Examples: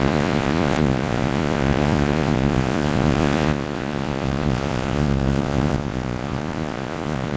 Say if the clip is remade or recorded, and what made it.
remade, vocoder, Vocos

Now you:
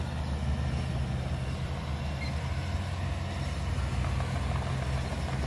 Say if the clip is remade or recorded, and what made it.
recorded